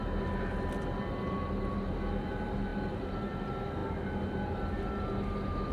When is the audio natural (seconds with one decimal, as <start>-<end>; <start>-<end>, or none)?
0.0-5.7